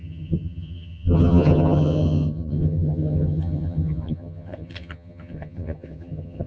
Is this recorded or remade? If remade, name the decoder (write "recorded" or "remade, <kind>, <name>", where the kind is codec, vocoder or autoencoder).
remade, vocoder, HiFi-GAN